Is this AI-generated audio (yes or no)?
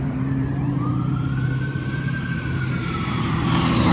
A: yes